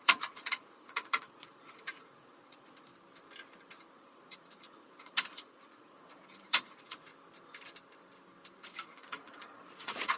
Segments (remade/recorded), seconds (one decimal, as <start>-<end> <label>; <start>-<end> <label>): 0.0-2.9 remade; 2.9-3.9 recorded; 3.9-7.1 remade; 7.1-8.6 recorded; 8.6-10.2 remade